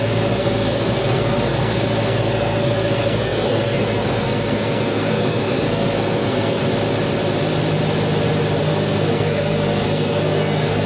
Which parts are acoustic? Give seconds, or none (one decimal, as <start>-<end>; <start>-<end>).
6.6-8.6